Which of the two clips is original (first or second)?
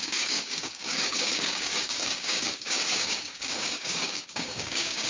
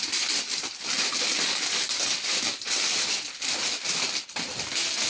second